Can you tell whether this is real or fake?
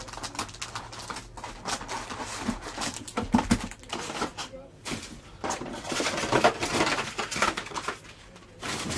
real